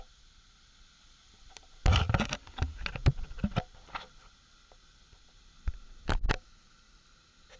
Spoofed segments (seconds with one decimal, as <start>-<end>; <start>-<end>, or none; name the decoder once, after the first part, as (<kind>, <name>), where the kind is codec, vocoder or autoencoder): 3.0-4.1 (vocoder, BigVGAN v2)